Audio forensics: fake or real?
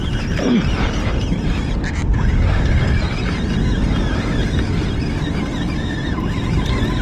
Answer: real